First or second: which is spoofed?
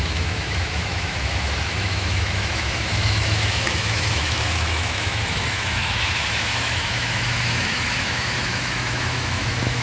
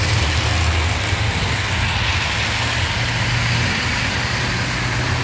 first